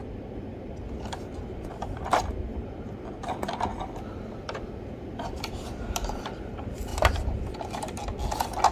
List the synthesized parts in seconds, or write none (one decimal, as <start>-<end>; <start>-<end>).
none